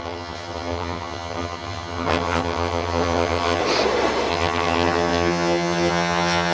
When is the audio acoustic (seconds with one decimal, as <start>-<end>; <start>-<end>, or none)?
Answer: 3.6-4.3